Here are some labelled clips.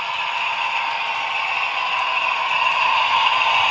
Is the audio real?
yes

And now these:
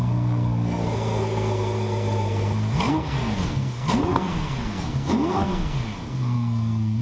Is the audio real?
no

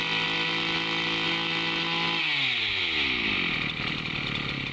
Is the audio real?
yes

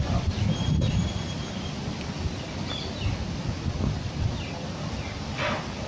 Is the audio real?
yes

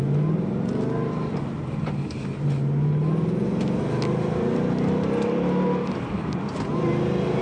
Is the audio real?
yes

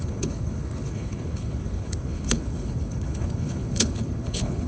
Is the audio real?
no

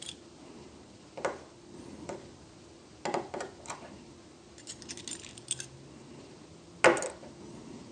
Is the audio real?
yes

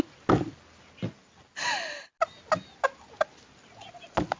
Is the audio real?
yes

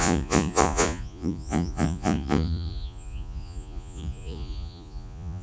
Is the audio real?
no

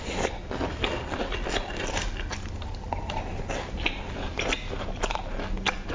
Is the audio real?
yes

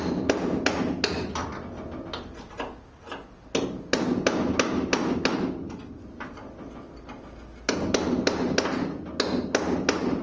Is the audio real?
yes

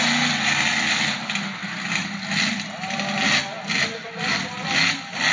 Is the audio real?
yes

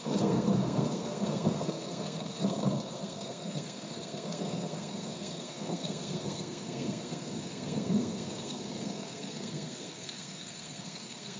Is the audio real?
no